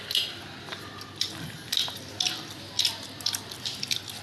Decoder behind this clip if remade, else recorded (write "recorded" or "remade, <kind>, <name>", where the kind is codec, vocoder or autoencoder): recorded